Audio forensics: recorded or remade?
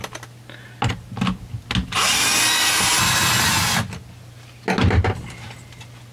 recorded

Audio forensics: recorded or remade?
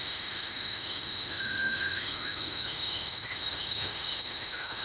remade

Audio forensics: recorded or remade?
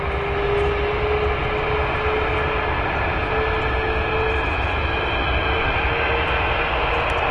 recorded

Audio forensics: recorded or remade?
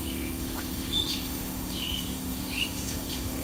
remade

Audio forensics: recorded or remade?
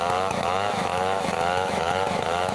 remade